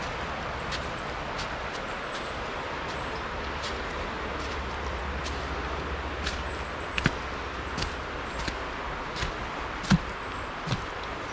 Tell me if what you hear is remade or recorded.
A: recorded